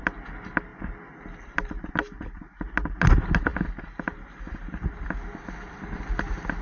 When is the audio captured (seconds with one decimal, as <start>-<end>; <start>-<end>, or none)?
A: 0.0-6.6